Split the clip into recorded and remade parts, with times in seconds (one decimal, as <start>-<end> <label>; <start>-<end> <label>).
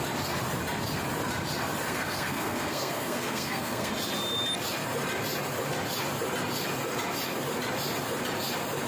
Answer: 0.0-1.9 recorded; 1.9-3.9 remade; 3.9-8.9 recorded